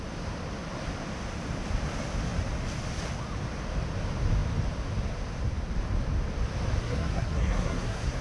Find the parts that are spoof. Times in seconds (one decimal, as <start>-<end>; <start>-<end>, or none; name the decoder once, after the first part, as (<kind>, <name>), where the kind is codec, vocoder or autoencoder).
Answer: 6.8-8.2 (codec, SNAC)